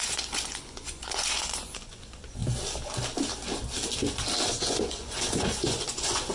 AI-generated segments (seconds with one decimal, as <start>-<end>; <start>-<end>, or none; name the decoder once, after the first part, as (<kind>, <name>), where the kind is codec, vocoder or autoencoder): 0.0-2.4 (vocoder, Vocos); 4.5-6.3